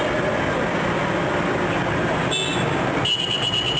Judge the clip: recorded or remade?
recorded